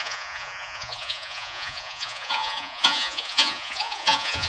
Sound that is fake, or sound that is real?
fake